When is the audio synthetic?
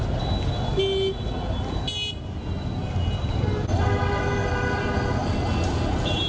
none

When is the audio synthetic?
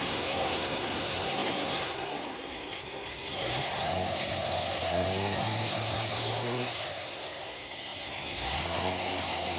0.0-9.6 (codec, SNAC)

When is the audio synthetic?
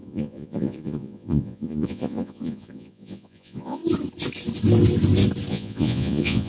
0.0-3.8 (vocoder, Vocos); 5.5-6.5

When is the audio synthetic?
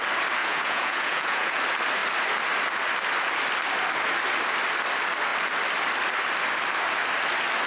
0.4-1.6 (vocoder, Vocos)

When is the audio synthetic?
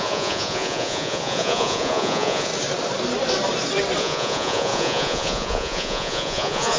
0.0-2.5 (vocoder, Vocos); 4.0-6.8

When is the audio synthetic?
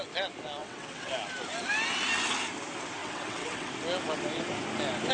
0.6-1.1 (vocoder, WaveNeXt); 3.0-3.7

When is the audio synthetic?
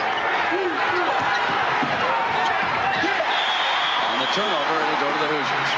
1.8-5.3 (vocoder, BigVGAN v2)